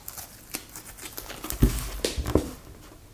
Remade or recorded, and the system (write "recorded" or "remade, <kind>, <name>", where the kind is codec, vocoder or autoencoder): recorded